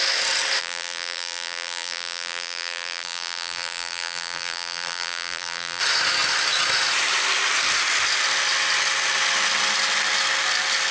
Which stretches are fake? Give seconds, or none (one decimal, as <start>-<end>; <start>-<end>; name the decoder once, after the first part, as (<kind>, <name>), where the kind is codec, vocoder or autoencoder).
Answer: 0.6-5.8 (vocoder, BigVGAN v2)